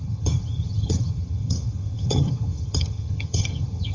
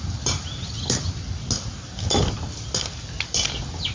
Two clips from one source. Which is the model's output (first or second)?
first